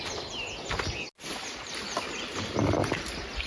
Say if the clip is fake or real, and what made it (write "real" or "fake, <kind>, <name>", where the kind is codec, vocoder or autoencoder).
real